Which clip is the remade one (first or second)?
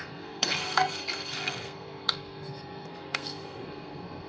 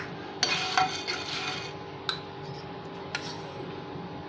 first